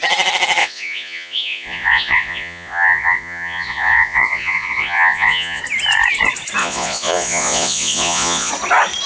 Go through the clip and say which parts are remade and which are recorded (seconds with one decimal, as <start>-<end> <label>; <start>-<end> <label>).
0.0-0.6 recorded; 0.6-5.6 remade; 5.6-6.6 recorded; 6.6-8.5 remade; 8.5-9.1 recorded